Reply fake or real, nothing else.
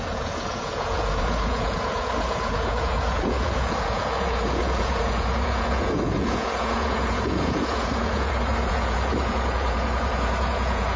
fake